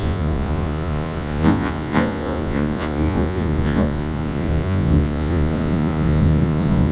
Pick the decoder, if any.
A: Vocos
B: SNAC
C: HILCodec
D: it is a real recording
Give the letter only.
A